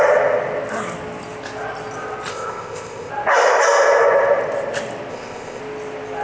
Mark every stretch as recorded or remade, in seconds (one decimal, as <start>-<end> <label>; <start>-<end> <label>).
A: 0.0-2.3 recorded; 2.3-3.1 remade; 3.1-5.1 recorded; 5.1-5.6 remade; 5.6-6.2 recorded